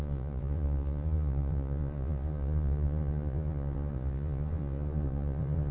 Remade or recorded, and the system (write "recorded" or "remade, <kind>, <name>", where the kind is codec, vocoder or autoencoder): remade, vocoder, Vocos